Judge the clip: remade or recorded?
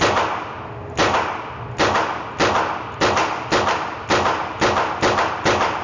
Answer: recorded